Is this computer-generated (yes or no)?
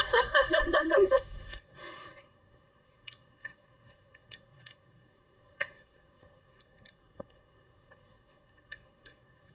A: yes